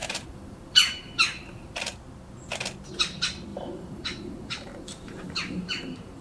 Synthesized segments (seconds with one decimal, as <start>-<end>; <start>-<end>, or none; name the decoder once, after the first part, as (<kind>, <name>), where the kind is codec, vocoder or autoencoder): 0.0-1.8 (vocoder, BigVGAN v2); 3.5-6.2